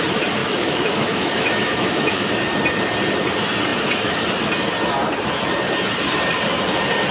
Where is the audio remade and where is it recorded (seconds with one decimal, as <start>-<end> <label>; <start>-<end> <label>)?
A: 0.0-0.4 recorded; 0.4-2.3 remade; 2.3-7.1 recorded